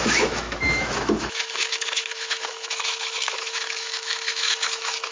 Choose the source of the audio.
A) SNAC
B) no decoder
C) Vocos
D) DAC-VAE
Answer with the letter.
D